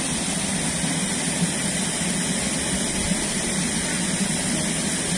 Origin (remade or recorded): recorded